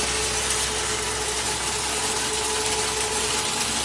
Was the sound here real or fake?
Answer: real